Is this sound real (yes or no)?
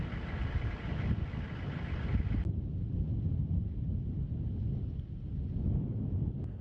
yes